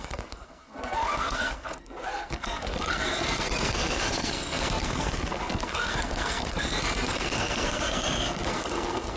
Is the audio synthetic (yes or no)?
yes